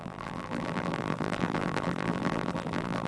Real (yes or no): no